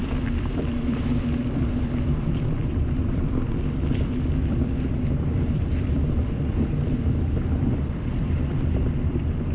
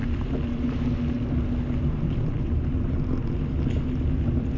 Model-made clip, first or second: first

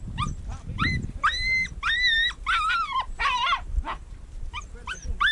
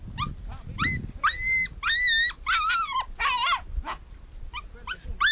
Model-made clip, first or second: first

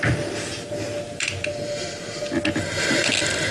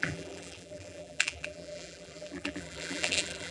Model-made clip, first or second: second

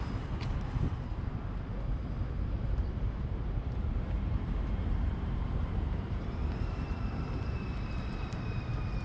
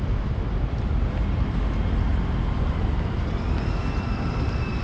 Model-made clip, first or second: first